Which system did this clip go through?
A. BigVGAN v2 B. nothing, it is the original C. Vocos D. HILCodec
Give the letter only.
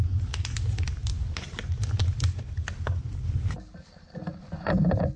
B